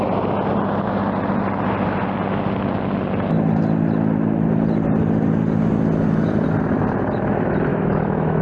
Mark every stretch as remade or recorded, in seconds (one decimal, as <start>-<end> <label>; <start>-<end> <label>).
0.0-7.7 recorded; 7.7-8.4 remade

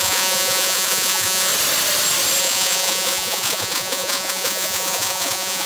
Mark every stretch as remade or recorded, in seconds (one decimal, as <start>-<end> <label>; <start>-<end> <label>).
0.0-1.5 remade; 1.5-2.4 recorded; 2.4-5.7 remade

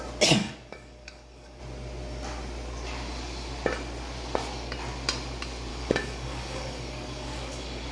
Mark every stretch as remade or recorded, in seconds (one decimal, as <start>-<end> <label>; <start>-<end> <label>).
0.0-0.4 recorded; 0.4-1.6 remade; 1.6-5.7 recorded; 5.7-7.9 remade

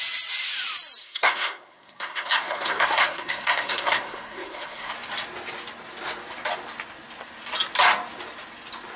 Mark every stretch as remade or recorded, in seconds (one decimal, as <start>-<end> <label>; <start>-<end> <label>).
0.0-1.0 recorded; 1.0-4.9 remade; 4.9-9.0 recorded

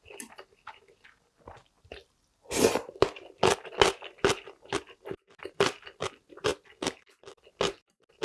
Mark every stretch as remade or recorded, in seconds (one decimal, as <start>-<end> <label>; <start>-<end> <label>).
0.0-8.2 recorded

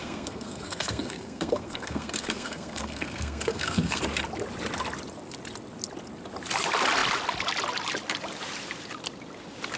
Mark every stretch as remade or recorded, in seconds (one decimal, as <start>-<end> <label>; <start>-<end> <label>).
0.0-4.0 remade; 4.0-9.8 recorded